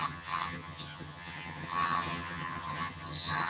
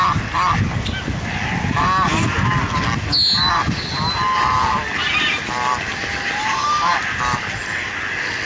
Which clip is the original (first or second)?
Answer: second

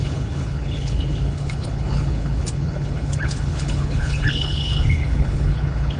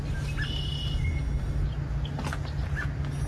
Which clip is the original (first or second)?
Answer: second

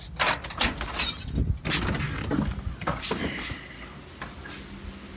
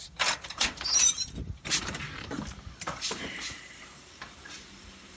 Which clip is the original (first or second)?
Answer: first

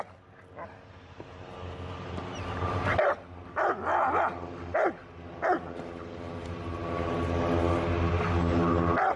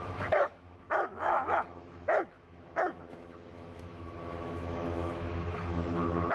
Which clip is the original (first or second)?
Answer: first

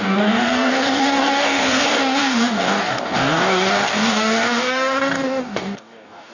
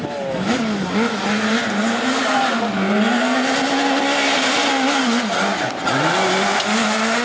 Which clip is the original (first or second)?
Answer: second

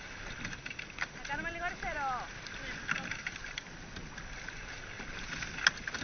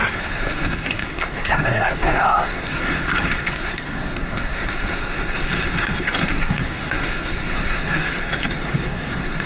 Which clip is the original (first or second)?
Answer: first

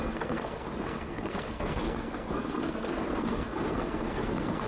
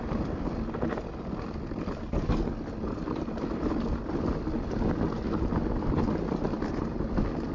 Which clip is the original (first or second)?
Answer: second